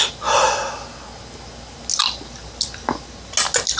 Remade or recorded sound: recorded